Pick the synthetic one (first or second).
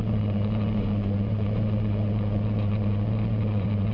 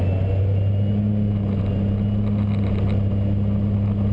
first